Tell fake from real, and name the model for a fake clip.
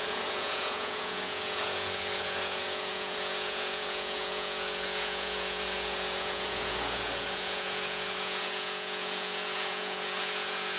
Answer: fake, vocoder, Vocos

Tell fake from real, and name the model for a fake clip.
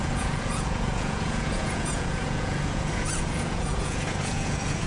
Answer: fake, vocoder, Vocos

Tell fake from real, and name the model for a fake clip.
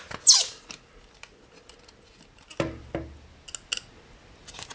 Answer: real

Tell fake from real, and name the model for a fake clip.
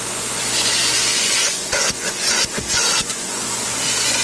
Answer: fake, vocoder, Vocos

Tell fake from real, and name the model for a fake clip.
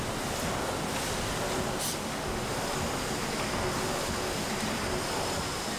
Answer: real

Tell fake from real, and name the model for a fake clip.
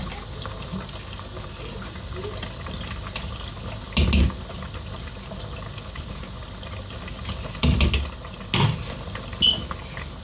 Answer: real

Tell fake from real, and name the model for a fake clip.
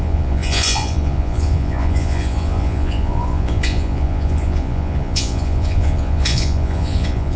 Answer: fake, vocoder, Vocos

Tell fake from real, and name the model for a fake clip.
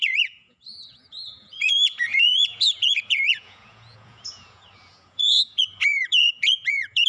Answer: fake, vocoder, Vocos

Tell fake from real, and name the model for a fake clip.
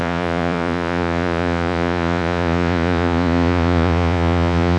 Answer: fake, vocoder, Vocos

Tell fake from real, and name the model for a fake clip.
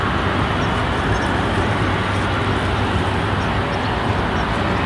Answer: real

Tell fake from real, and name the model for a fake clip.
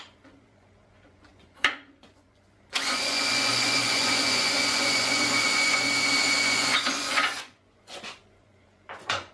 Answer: fake, vocoder, Vocos